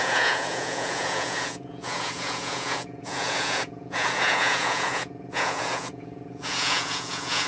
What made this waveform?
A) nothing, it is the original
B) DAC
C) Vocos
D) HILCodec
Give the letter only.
C